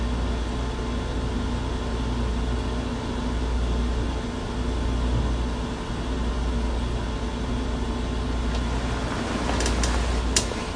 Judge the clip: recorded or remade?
recorded